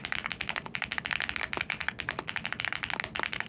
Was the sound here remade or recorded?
recorded